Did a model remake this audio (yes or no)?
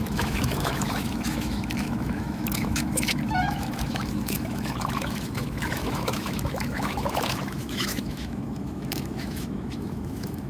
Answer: yes